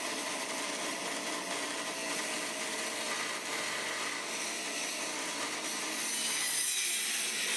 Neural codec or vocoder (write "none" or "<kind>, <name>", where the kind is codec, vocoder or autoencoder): none